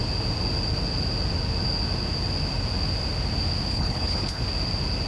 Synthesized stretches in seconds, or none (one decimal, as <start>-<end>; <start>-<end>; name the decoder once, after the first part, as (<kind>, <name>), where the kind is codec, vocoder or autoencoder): 3.7-4.4 (codec, HILCodec)